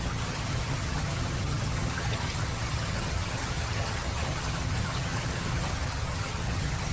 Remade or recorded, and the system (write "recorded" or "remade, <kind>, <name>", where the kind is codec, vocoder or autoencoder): remade, vocoder, HiFi-GAN